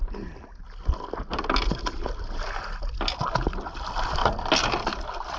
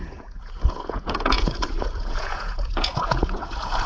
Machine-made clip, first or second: second